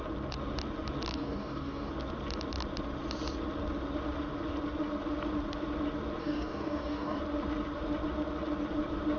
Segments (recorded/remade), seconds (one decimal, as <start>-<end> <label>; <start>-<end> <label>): 0.0-1.1 recorded; 1.1-1.9 remade; 1.9-6.2 recorded; 6.2-7.2 remade; 7.2-9.2 recorded